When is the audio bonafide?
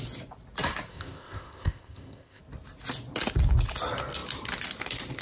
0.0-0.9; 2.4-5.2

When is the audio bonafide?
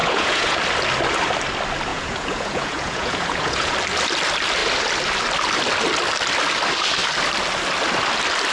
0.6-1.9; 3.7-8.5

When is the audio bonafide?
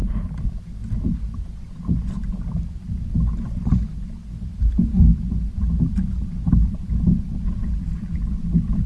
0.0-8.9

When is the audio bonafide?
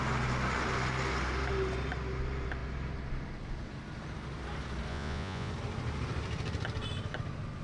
0.0-4.9; 5.5-7.6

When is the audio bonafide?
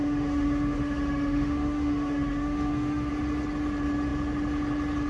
3.1-5.1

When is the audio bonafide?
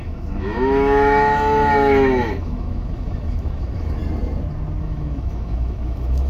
4.0-4.8